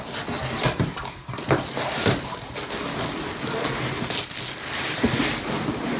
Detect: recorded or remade recorded